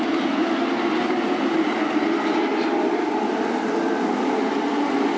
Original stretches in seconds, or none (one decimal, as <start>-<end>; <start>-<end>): none